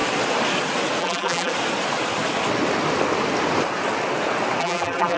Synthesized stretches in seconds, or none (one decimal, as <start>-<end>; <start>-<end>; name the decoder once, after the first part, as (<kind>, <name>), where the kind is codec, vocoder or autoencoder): 1.0-1.5 (vocoder, BigVGAN v2); 4.6-5.2